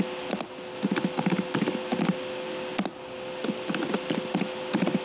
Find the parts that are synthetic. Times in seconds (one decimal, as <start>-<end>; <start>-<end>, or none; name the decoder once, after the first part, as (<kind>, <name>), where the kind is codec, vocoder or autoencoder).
none